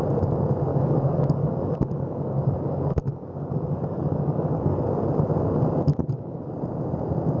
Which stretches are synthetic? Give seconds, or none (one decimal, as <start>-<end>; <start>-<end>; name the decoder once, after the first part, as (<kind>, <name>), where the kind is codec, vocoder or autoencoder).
0.7-4.8 (codec, DAC); 5.9-6.5